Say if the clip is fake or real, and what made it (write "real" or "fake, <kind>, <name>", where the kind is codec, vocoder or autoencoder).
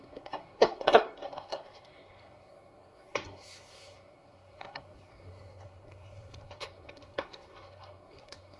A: fake, codec, SNAC